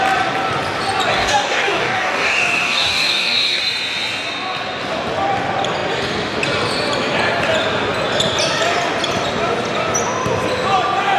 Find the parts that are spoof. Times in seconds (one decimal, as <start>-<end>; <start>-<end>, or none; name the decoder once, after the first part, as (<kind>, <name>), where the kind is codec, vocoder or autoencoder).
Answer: 1.1-3.6 (codec, DAC)